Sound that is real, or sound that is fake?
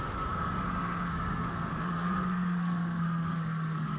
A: fake